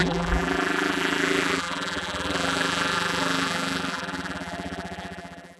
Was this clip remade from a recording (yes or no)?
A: yes